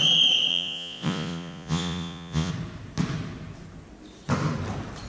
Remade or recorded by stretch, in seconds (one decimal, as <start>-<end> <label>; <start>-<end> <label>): 0.0-0.5 recorded; 0.5-2.5 remade; 2.5-5.1 recorded